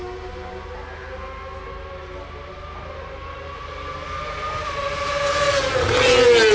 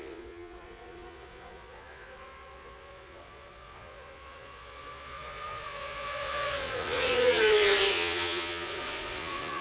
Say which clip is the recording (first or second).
first